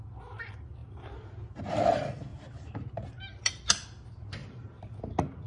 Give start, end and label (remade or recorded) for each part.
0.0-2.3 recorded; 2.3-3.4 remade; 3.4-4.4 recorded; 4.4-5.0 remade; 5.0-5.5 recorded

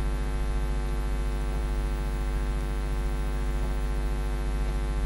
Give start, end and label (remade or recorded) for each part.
0.0-5.1 recorded

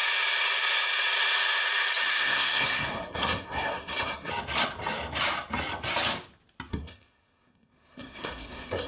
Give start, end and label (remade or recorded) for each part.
0.0-2.1 recorded; 2.1-4.3 remade; 4.3-6.7 recorded; 6.7-8.9 remade

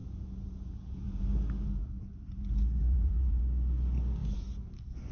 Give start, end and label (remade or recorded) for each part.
0.0-1.2 remade; 1.2-2.8 recorded; 2.8-3.4 remade; 3.4-5.1 recorded